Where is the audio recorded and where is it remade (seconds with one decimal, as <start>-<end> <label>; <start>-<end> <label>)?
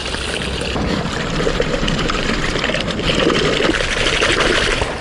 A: 0.0-3.0 remade; 3.0-5.0 recorded